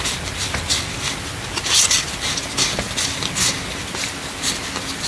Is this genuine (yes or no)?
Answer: yes